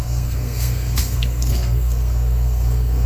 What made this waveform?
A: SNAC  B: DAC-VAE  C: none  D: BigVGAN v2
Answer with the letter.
A